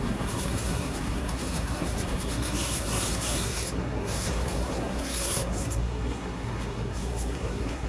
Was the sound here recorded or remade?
remade